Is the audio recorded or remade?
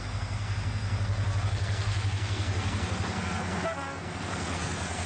remade